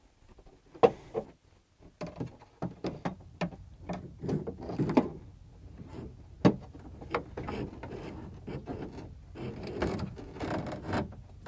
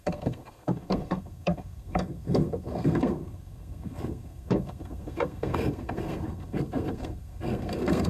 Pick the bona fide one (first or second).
first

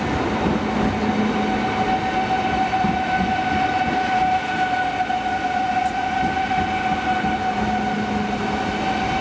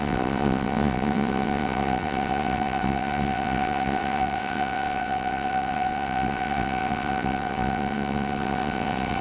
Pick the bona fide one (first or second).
first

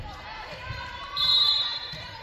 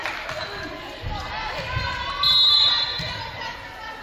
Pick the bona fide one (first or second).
second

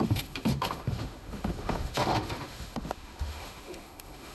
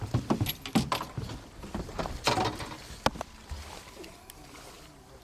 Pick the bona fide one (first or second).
second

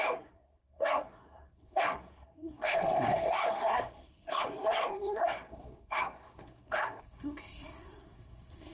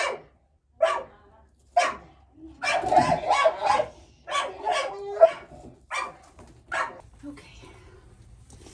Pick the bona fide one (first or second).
second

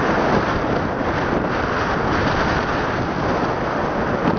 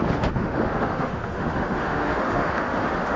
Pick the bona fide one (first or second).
first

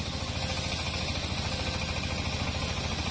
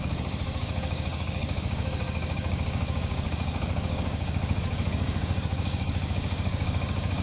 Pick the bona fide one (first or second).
first